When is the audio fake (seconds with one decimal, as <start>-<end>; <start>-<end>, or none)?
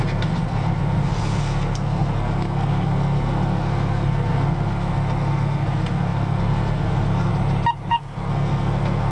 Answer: 0.0-7.3; 7.9-9.1